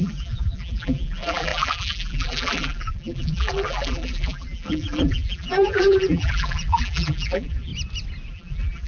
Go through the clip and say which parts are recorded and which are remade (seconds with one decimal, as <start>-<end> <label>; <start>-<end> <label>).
0.0-7.7 remade; 7.7-8.3 recorded; 8.3-8.9 remade